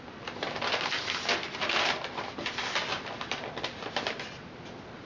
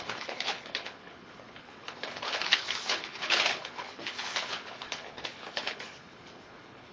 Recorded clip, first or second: first